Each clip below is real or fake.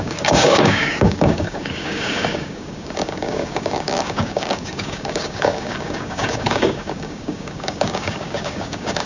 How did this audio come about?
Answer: fake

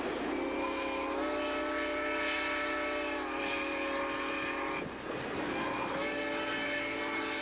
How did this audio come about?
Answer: real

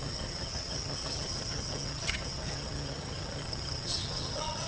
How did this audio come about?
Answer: fake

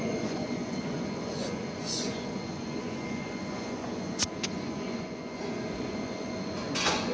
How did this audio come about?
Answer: fake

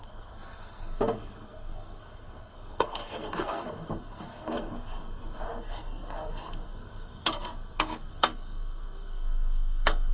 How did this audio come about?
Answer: fake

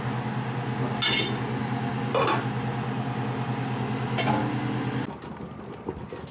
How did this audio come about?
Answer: real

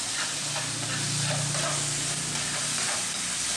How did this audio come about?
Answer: real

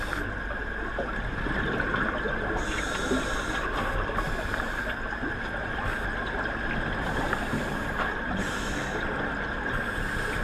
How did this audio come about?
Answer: real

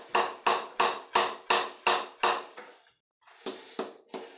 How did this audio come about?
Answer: real